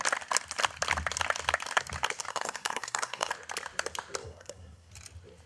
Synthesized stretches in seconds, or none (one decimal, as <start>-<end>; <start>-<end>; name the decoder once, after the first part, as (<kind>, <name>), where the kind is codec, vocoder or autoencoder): 2.3-3.3 (codec, SNAC); 4.2-4.9